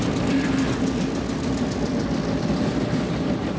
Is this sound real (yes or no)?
yes